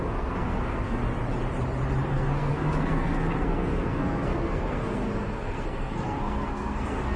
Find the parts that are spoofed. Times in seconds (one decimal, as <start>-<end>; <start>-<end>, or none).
0.0-1.0; 2.1-7.2

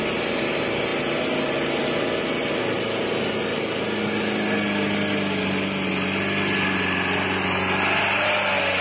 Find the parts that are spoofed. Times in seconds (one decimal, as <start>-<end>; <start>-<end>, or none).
none

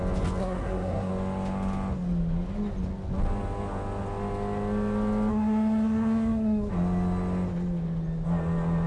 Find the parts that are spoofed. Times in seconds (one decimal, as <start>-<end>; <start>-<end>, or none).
0.4-1.1; 5.3-6.7